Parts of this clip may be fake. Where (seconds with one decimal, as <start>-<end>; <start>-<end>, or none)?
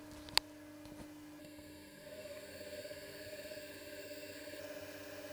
1.4-4.6